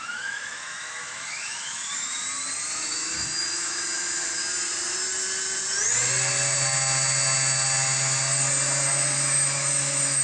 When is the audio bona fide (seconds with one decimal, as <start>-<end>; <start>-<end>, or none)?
2.2-2.7; 4.4-8.9